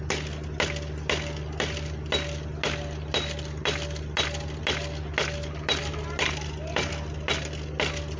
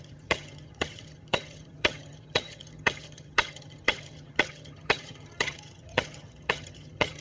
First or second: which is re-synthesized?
second